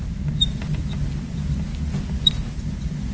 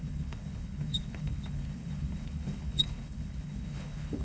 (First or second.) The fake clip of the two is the second